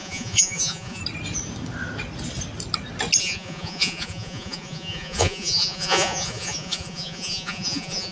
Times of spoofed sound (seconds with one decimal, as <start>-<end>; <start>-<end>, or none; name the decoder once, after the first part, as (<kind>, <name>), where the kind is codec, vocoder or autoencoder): 0.0-1.0 (vocoder, Vocos); 3.2-8.1